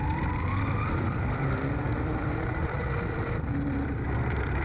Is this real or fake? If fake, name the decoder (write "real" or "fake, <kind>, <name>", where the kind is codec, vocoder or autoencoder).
fake, vocoder, BigVGAN v2